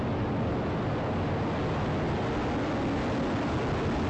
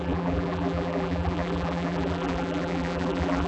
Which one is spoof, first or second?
second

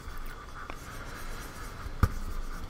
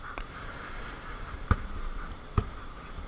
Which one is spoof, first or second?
second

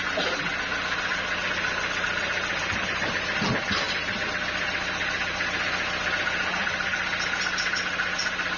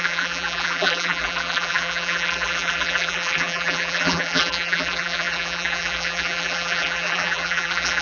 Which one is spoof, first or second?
second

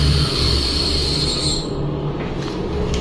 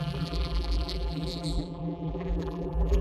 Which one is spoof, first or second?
second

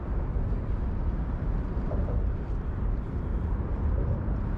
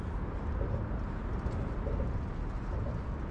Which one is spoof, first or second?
first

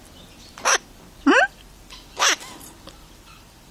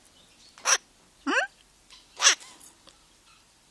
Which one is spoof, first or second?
first